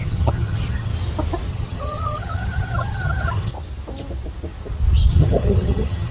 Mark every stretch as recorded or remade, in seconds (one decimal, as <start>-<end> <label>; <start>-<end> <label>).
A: 0.0-0.9 remade; 0.9-1.5 recorded; 1.5-3.5 remade; 3.5-5.1 recorded; 5.1-6.1 remade